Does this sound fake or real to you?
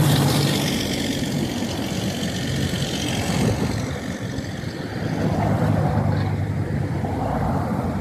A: fake